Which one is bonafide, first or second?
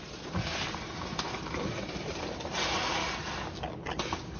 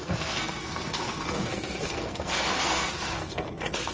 first